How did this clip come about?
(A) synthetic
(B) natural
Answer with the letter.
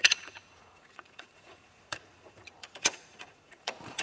A